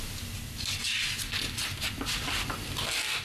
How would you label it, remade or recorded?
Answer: remade